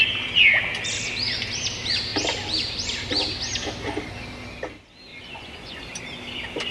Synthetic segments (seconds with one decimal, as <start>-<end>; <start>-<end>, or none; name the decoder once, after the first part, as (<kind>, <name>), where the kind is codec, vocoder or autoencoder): 5.1-5.8 (vocoder, Vocos)